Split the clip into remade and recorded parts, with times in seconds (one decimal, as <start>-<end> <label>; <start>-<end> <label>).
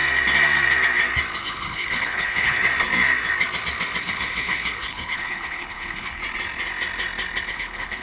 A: 0.0-1.4 recorded; 1.4-2.6 remade; 2.6-4.0 recorded; 4.0-6.2 remade; 6.2-7.5 recorded; 7.5-8.0 remade